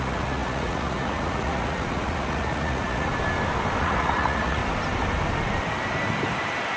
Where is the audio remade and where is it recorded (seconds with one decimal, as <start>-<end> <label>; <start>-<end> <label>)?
0.0-3.1 remade; 3.1-3.8 recorded; 3.8-4.6 remade; 4.6-6.8 recorded